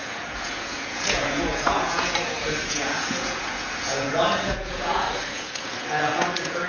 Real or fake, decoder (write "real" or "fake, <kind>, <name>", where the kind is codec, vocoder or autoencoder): fake, vocoder, Vocos